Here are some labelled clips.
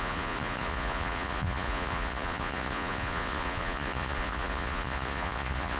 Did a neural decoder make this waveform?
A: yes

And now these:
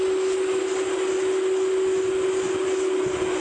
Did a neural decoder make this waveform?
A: no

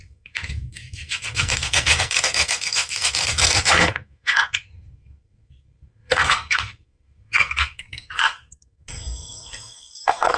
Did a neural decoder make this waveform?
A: yes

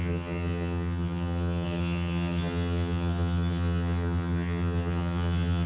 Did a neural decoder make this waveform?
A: yes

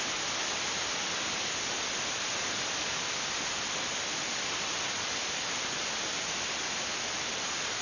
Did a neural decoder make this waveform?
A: no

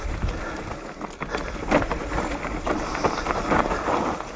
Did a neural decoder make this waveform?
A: no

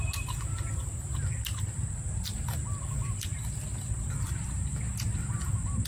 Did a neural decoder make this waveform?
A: no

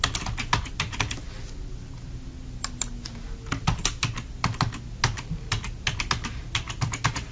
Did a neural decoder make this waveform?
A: no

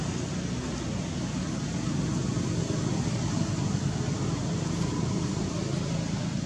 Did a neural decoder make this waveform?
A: no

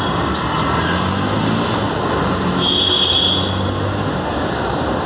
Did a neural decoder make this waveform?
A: no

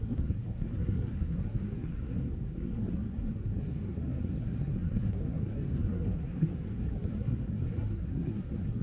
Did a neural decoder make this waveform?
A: yes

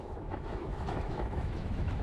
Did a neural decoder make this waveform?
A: yes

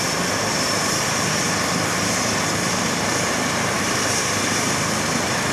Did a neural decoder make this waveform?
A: yes